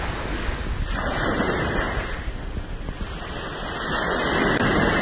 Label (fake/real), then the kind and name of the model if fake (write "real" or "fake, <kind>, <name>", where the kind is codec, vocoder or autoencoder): real